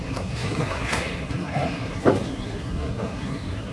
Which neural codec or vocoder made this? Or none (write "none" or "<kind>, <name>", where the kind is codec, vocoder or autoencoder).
codec, SNAC